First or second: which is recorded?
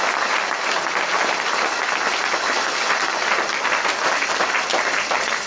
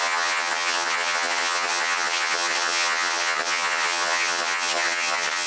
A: first